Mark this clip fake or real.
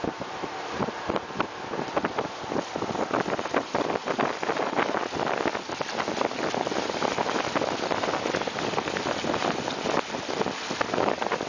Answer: real